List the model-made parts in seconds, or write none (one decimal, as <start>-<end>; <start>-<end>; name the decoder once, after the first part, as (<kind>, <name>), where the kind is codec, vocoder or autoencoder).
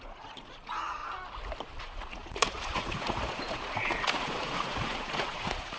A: 0.0-1.0 (vocoder, Vocos); 1.8-5.8